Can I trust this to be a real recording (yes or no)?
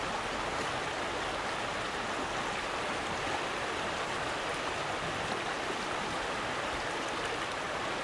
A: yes